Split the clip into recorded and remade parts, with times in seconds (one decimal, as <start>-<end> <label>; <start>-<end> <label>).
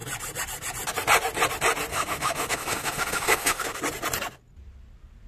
0.0-1.9 recorded; 1.9-3.8 remade; 3.8-5.3 recorded